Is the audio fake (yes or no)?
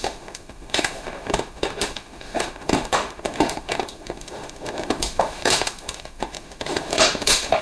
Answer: yes